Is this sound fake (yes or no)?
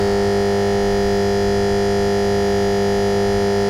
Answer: no